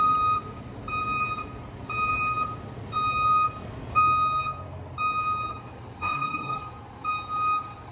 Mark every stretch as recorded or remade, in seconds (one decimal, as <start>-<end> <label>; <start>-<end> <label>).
0.0-6.0 recorded; 6.0-6.6 remade; 6.6-7.9 recorded